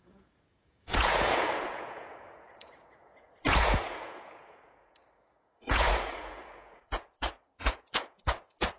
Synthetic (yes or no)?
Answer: yes